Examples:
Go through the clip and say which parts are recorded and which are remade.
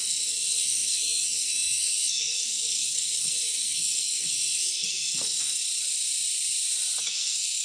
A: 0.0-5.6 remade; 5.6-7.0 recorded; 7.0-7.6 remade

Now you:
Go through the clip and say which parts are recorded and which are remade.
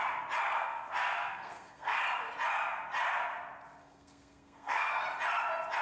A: 0.0-0.5 recorded; 0.5-2.0 remade; 2.0-3.8 recorded; 3.8-5.0 remade; 5.0-5.8 recorded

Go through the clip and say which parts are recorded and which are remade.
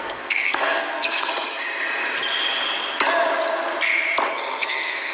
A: 0.0-1.3 remade; 1.3-4.3 recorded; 4.3-5.1 remade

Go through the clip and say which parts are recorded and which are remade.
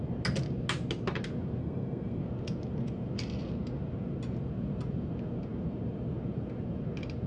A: 0.0-1.6 recorded; 1.6-2.2 remade; 2.2-7.3 recorded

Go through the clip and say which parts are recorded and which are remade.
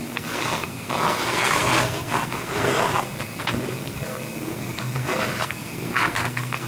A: 0.0-6.7 remade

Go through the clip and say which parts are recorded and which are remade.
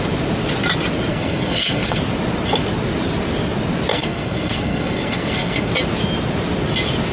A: 0.0-1.1 recorded; 1.1-2.0 remade; 2.0-3.9 recorded; 3.9-5.7 remade; 5.7-7.1 recorded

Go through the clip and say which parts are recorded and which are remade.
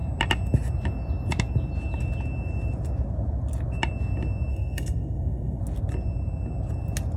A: 0.0-4.5 recorded; 4.5-5.6 remade; 5.6-7.2 recorded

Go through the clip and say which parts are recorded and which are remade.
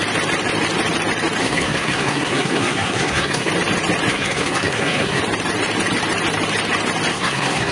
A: 0.0-1.4 recorded; 1.4-3.5 remade; 3.5-4.1 recorded; 4.1-5.2 remade; 5.2-7.1 recorded; 7.1-7.7 remade